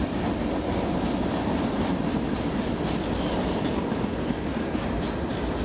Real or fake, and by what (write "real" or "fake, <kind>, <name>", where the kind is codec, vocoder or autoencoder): real